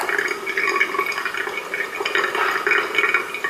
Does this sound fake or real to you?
real